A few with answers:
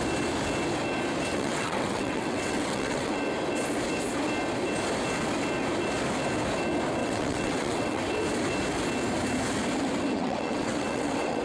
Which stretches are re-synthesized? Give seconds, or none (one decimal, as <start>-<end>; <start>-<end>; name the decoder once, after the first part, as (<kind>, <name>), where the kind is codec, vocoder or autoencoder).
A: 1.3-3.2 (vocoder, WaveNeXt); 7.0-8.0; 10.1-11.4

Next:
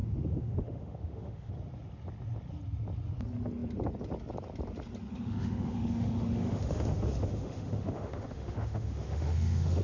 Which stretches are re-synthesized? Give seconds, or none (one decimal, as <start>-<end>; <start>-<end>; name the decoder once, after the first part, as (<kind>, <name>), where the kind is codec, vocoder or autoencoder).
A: 0.0-1.5 (autoencoder, DAC-VAE); 5.1-9.8

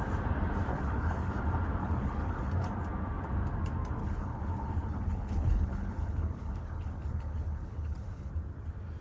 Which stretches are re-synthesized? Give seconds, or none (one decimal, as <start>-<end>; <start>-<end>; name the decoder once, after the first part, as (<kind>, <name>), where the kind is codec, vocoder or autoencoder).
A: 0.7-1.3 (codec, HILCodec); 1.8-2.5; 4.0-8.3

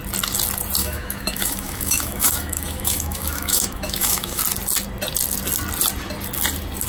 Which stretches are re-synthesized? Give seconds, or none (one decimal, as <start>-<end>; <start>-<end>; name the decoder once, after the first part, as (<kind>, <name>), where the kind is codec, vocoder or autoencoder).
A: 0.8-4.4 (autoencoder, DAC-VAE)